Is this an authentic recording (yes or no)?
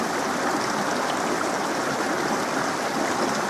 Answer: yes